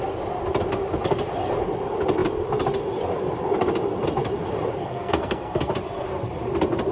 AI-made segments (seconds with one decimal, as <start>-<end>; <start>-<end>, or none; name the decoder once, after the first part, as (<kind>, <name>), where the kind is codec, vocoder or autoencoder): 4.8-5.7 (codec, SNAC)